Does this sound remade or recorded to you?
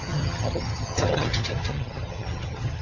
remade